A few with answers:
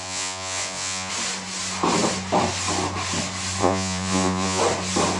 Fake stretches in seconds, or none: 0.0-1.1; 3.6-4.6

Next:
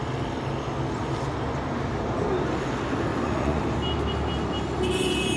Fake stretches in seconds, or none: 3.1-3.6